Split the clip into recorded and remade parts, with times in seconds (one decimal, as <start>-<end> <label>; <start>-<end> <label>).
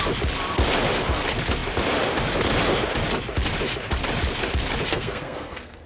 0.0-4.9 recorded; 4.9-5.9 remade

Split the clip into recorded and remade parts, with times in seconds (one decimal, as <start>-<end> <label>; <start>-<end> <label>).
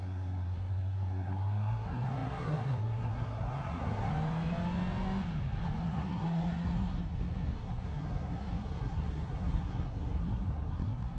0.0-4.1 remade; 4.1-5.8 recorded; 5.8-11.2 remade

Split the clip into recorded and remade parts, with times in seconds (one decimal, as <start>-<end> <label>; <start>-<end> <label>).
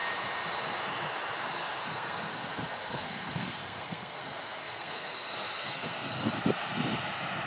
0.0-1.8 recorded; 1.8-6.3 remade; 6.3-7.5 recorded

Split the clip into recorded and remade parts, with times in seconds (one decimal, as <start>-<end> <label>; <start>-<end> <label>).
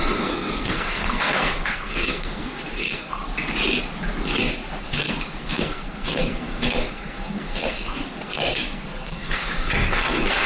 0.0-3.2 remade; 3.2-4.8 recorded; 4.8-10.5 remade